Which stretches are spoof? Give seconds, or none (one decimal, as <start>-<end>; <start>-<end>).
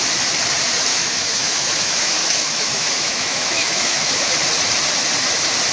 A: 0.9-4.3